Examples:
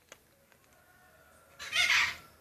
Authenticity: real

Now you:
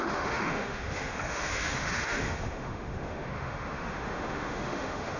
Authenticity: fake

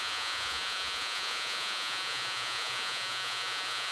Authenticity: fake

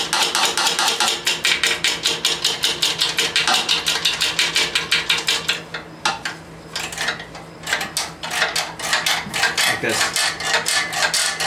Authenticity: real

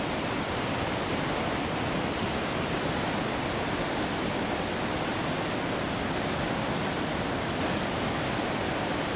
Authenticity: real